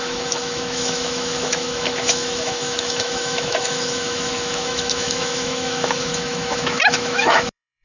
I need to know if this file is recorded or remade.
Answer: remade